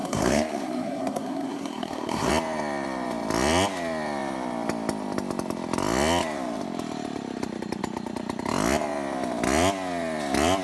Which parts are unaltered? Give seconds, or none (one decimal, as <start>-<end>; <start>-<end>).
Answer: 2.3-10.6